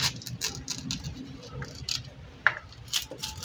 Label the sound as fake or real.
real